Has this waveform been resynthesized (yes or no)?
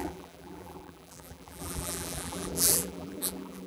yes